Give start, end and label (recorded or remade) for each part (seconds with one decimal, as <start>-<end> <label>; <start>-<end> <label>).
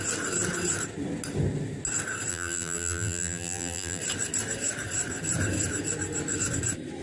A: 0.0-2.3 recorded; 2.3-4.0 remade; 4.0-7.0 recorded